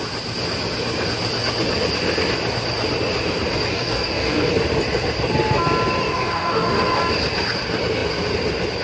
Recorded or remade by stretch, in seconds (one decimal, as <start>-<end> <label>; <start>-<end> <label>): 0.0-3.7 recorded; 3.7-4.5 remade; 4.5-6.0 recorded; 6.0-7.0 remade; 7.0-8.8 recorded